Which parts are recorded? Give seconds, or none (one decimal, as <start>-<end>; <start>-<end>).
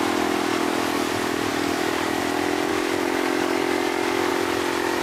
0.0-0.5; 1.1-1.5; 2.2-2.7; 4.3-5.0